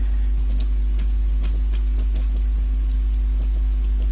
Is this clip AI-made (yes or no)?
no